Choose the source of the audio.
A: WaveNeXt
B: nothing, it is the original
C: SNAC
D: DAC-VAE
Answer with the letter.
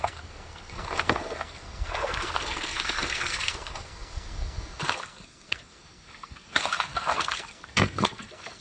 C